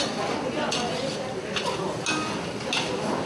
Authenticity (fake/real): real